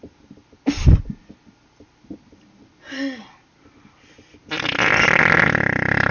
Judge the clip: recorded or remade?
recorded